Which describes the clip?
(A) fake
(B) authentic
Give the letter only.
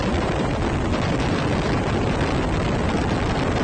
B